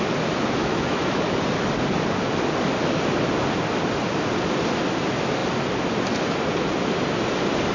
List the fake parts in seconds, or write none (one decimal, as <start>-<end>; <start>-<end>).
0.6-1.4